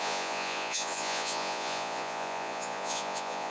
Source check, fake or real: fake